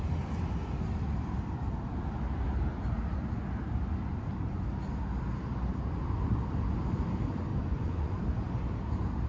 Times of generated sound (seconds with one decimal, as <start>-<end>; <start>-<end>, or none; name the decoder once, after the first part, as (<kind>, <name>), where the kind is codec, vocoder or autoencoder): 7.5-8.1 (vocoder, Vocos)

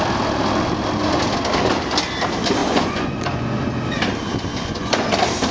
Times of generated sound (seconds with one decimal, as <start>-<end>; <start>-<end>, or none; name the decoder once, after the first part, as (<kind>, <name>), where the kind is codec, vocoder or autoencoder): 2.6-3.6 (vocoder, Vocos); 4.5-5.1

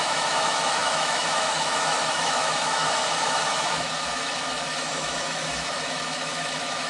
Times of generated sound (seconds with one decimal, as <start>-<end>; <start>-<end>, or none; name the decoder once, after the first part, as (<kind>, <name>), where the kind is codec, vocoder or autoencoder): 0.0-6.9 (autoencoder, DAC-VAE)

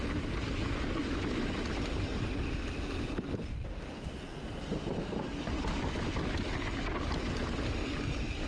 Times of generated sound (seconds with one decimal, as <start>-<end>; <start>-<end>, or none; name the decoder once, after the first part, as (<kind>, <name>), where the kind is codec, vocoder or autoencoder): none

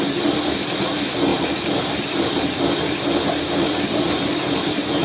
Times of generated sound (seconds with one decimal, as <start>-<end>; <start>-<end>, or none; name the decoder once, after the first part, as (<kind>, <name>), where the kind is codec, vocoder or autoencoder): 1.3-2.6 (vocoder, BigVGAN v2)

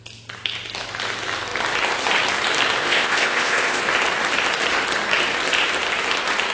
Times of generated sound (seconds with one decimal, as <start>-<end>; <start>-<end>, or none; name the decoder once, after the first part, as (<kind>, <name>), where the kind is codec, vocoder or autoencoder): 2.8-3.8 (codec, ZipCodec)

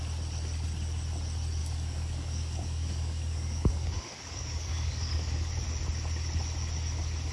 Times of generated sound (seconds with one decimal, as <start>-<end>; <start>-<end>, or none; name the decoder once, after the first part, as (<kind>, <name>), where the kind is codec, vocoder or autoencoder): 1.6-5.5 (codec, DAC)